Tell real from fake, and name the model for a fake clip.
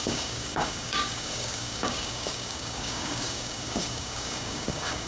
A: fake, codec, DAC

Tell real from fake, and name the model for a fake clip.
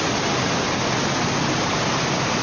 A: real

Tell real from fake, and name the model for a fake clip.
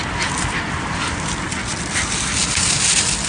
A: real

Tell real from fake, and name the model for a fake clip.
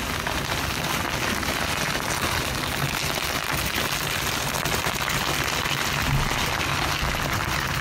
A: real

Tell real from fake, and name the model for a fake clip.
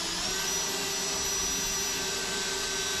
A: real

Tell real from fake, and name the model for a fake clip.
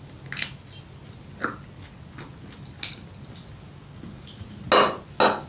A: real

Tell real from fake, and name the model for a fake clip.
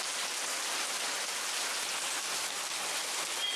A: real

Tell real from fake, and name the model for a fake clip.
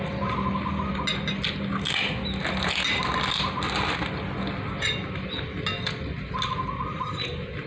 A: real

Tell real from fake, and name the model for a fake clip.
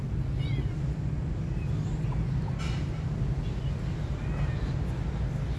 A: real